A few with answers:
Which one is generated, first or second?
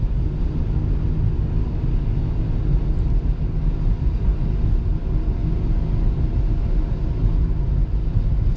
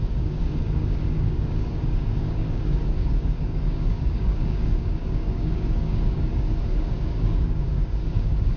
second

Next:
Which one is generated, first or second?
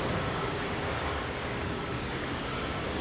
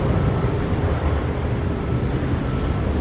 first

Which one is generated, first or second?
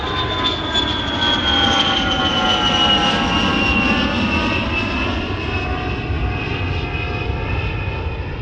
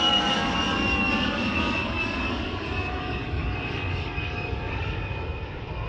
second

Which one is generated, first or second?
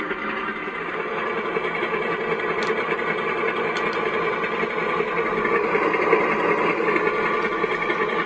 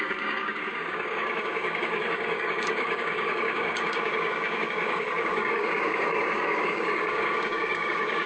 second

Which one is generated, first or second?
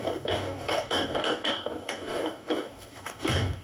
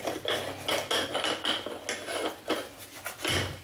first